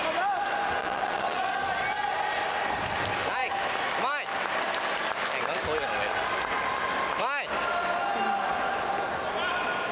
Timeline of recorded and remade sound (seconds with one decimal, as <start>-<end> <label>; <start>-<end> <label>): 0.0-0.8 recorded; 0.8-1.6 remade; 1.6-9.9 recorded